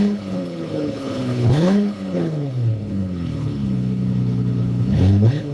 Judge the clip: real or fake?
fake